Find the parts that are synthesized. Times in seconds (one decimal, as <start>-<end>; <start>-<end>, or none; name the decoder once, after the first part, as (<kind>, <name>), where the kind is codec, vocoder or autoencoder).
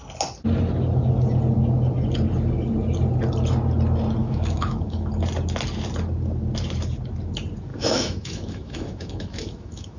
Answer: 4.2-5.1 (autoencoder, DAC-VAE); 7.7-10.0